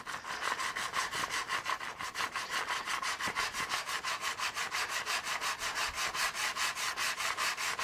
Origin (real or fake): fake